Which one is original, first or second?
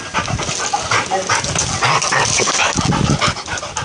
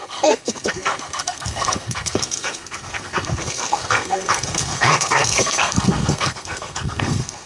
first